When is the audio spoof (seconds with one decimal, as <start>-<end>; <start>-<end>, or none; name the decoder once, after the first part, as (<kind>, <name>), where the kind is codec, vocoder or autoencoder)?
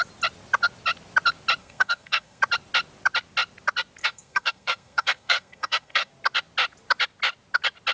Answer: 1.6-2.4 (codec, SNAC); 4.0-6.1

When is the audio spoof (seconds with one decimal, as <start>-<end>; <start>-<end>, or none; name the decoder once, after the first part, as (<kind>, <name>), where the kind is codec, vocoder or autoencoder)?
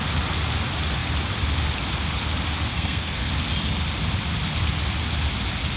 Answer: 2.7-3.3 (codec, SNAC)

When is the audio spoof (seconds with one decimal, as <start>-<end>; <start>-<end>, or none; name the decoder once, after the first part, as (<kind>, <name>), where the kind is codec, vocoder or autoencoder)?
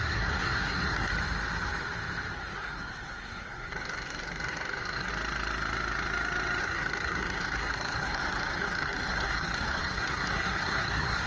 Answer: 0.0-1.1 (codec, SNAC); 2.3-5.1; 6.6-11.3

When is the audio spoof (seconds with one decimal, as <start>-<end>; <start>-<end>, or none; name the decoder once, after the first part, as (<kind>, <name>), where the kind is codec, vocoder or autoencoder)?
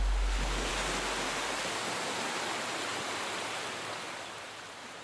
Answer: none